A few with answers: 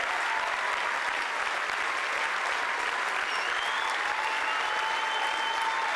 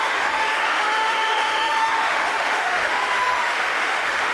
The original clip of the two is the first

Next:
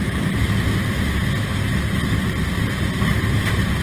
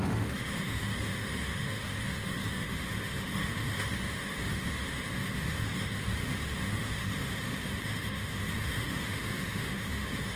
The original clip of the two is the first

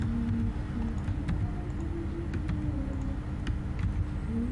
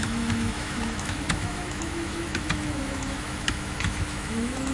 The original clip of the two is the first